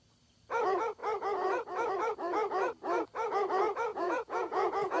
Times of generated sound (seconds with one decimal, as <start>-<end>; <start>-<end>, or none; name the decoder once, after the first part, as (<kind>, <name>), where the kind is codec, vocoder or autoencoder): 3.9-5.0 (vocoder, Vocos)